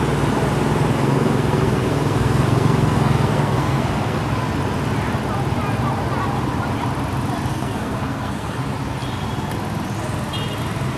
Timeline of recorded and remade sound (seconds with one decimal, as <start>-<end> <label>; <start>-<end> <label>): 0.0-0.9 recorded; 0.9-4.2 remade; 4.2-7.5 recorded; 7.5-8.6 remade; 8.6-11.0 recorded